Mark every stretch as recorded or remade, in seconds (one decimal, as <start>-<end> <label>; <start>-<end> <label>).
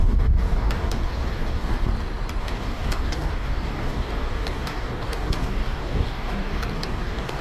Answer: 0.0-1.9 remade; 1.9-2.4 recorded; 2.4-7.4 remade